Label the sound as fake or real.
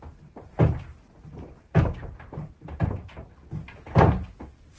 real